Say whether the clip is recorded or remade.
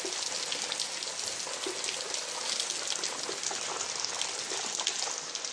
recorded